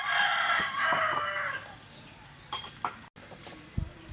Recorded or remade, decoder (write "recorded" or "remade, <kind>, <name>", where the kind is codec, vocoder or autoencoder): recorded